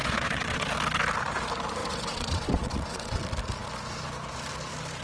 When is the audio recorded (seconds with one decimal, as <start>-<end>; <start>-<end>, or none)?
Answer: 0.7-1.8; 3.2-5.0